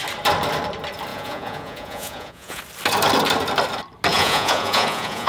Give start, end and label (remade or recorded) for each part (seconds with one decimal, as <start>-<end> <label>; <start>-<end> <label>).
0.0-1.1 recorded; 1.1-2.6 remade; 2.6-4.1 recorded; 4.1-5.3 remade